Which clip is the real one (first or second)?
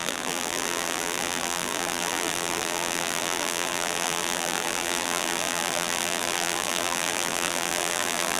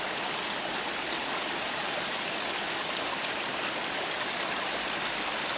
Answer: second